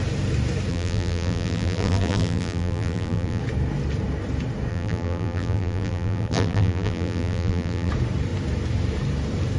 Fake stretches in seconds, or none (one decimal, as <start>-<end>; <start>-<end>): 0.7-3.4; 4.7-7.9